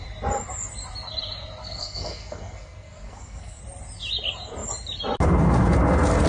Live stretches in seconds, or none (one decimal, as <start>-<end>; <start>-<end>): 0.0-1.6; 3.6-6.3